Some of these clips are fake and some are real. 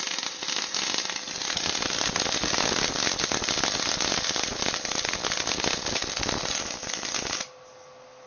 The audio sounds real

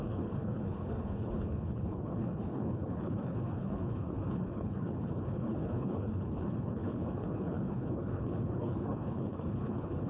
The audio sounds fake